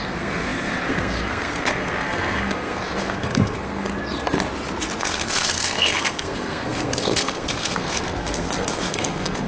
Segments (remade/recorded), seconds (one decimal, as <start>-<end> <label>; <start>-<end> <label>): 0.0-3.9 remade; 3.9-5.0 recorded; 5.0-9.5 remade